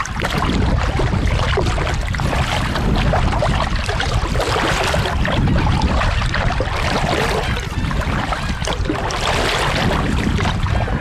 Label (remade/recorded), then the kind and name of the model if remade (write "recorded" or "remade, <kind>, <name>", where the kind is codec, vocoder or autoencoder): recorded